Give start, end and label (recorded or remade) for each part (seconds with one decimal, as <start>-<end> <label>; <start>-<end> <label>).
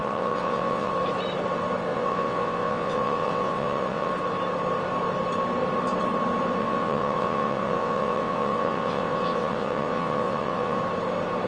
0.0-0.9 remade; 0.9-1.9 recorded; 1.9-4.1 remade; 4.1-6.6 recorded; 6.6-10.8 remade; 10.8-11.5 recorded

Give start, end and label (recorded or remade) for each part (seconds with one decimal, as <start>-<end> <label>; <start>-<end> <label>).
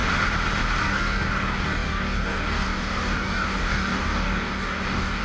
0.0-0.8 recorded; 0.8-5.2 remade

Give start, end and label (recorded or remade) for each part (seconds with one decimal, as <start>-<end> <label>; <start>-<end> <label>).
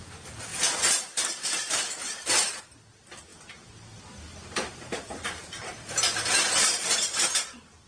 0.0-7.9 recorded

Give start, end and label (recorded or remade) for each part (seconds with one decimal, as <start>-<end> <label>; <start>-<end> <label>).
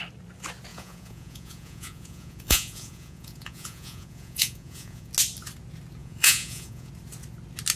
0.0-0.7 recorded; 0.7-5.1 remade; 5.1-6.0 recorded; 6.0-6.9 remade; 6.9-7.8 recorded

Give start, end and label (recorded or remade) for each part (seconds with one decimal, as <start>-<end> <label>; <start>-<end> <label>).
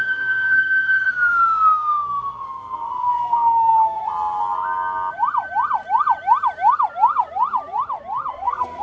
0.0-4.0 remade; 4.0-8.3 recorded; 8.3-8.8 remade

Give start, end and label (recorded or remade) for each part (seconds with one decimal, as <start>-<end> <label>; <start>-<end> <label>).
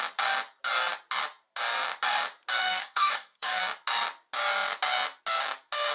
0.0-2.6 recorded; 2.6-3.6 remade; 3.6-5.9 recorded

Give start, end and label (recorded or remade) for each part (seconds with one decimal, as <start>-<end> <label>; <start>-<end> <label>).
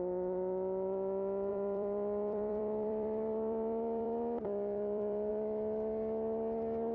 0.0-1.5 recorded; 1.5-5.3 remade; 5.3-6.9 recorded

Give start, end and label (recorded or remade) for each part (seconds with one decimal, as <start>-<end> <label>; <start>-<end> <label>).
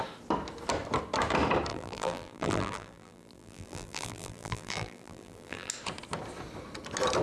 0.0-1.7 recorded; 1.7-5.7 remade; 5.7-7.2 recorded